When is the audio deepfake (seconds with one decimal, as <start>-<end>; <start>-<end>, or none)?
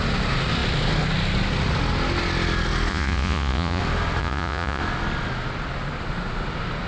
2.9-3.8; 4.2-4.8